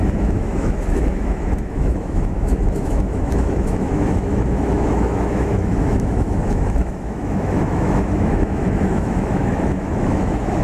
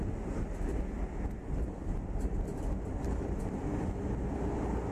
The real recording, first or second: second